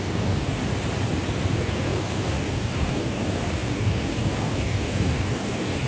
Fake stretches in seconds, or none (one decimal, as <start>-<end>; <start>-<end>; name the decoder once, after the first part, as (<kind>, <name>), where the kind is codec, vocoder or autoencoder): 0.0-0.6 (codec, DAC); 1.5-5.9